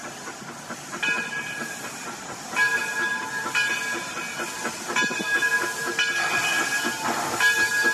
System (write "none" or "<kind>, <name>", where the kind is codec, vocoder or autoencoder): none